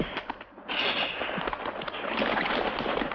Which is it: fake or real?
real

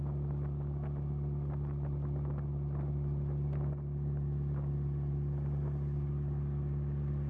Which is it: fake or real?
real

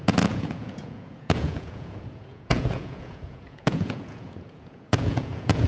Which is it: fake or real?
fake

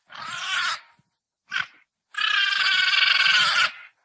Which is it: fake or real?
real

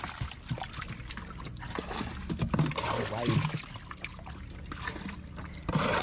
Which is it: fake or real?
real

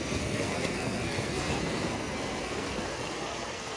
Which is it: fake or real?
fake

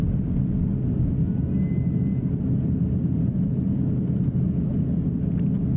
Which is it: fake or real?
real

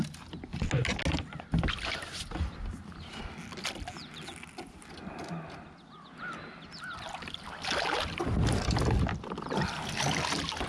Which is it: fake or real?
real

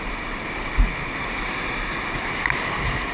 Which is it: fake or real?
real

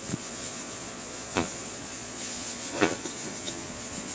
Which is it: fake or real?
fake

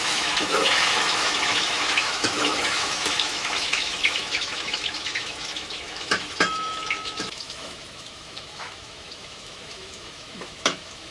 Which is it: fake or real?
fake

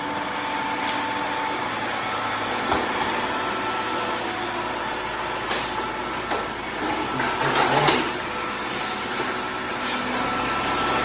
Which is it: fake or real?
real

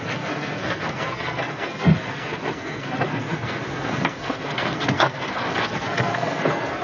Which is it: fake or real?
fake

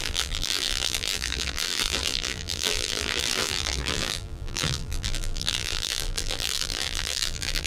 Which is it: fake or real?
fake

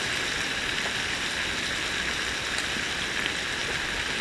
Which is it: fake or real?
real